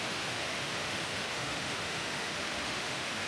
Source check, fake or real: fake